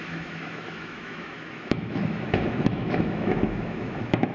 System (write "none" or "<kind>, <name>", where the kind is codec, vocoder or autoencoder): autoencoder, DAC-VAE